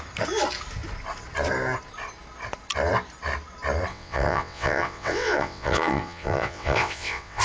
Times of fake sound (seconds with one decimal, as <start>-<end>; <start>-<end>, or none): 3.9-7.4